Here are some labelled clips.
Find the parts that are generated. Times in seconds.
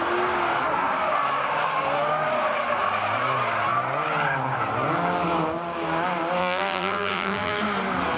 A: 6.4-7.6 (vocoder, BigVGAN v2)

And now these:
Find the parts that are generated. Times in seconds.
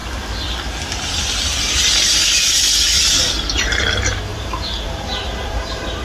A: 4.3-6.0 (vocoder, BigVGAN v2)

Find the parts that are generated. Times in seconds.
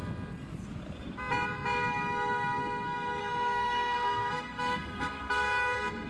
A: 3.2-6.1 (codec, SNAC)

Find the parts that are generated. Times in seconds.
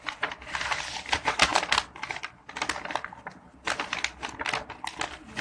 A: none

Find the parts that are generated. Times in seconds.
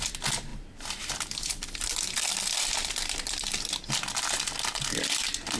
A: 0.5-3.9 (vocoder, BigVGAN v2); 4.7-5.6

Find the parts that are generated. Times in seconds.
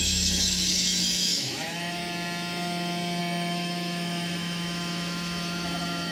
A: 0.0-2.0 (autoencoder, DAC-VAE); 3.2-6.1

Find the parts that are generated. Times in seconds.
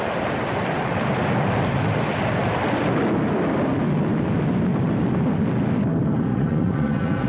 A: 6.3-7.3 (vocoder, Vocos)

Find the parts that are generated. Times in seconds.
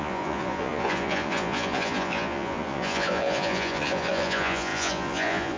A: 0.0-5.6 (vocoder, Vocos)